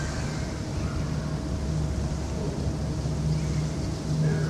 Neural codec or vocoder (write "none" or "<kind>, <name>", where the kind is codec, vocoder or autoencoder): none